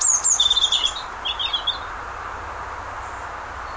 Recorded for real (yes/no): yes